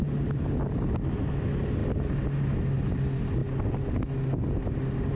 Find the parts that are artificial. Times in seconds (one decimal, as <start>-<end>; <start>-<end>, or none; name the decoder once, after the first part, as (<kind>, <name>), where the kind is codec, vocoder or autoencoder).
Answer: none